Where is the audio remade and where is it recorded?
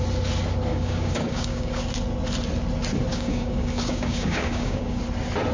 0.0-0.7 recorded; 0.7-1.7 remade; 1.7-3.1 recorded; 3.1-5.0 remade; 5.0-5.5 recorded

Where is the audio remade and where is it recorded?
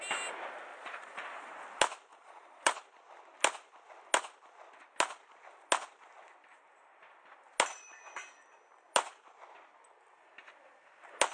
0.0-0.7 recorded; 0.7-1.5 remade; 1.5-2.1 recorded; 2.1-2.8 remade; 2.8-11.3 recorded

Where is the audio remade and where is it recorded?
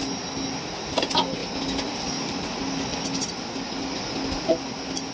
0.0-5.1 recorded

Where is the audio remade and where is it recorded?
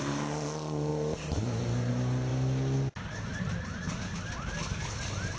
0.0-5.4 recorded